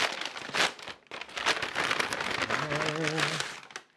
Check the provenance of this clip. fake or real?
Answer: real